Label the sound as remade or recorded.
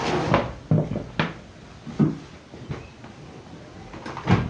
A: recorded